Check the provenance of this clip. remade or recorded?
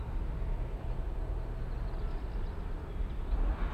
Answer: recorded